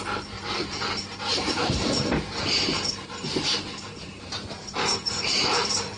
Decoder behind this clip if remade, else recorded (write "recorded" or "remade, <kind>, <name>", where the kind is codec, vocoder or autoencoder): remade, vocoder, BigVGAN v2